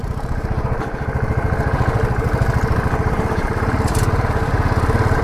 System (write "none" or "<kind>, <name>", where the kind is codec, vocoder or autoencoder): vocoder, BigVGAN v2